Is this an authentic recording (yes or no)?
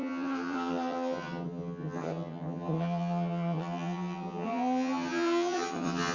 no